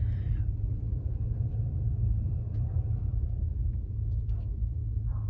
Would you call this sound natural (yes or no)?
no